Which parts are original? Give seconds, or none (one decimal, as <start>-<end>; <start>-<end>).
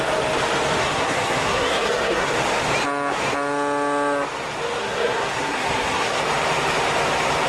0.0-0.8; 2.3-4.8; 6.2-7.5